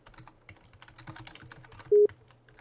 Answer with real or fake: real